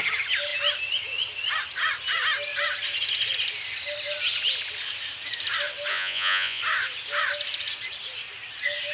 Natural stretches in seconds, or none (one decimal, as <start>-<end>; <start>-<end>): 0.0-5.9; 6.6-8.9